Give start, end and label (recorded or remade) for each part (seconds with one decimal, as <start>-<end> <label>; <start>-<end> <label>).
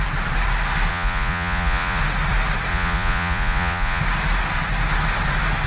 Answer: 0.0-0.9 recorded; 0.9-2.0 remade; 2.0-2.7 recorded; 2.7-4.0 remade; 4.0-5.7 recorded